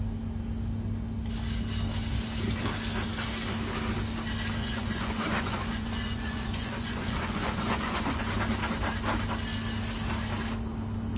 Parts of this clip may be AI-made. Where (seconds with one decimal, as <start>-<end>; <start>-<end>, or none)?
4.6-8.2